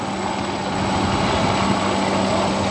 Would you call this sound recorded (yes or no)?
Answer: yes